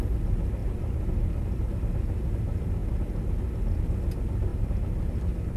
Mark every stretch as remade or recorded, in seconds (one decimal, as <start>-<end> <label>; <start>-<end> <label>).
0.0-0.6 recorded; 0.6-1.8 remade; 1.8-4.5 recorded; 4.5-5.6 remade